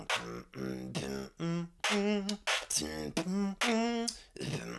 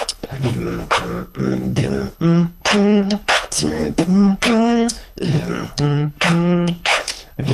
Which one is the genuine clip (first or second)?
first